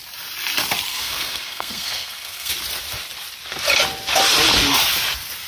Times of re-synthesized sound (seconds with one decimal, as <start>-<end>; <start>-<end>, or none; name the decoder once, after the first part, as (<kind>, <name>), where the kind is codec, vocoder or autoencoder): 0.9-2.5 (codec, SNAC)